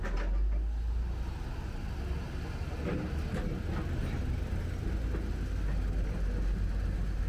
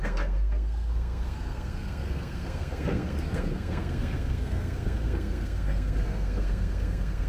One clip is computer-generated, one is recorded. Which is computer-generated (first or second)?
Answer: second